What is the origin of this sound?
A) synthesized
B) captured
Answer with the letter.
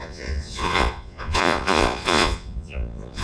A